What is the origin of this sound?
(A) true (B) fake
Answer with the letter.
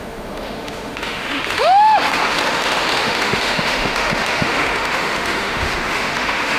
B